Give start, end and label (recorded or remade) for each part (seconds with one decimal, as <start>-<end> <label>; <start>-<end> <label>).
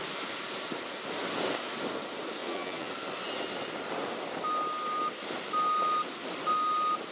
0.0-2.4 recorded; 2.4-2.9 remade; 2.9-7.1 recorded